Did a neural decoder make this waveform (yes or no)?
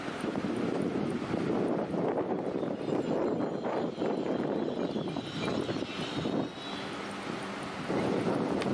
no